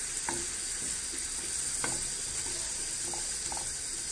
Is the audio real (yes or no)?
yes